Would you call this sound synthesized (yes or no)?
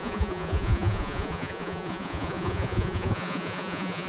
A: yes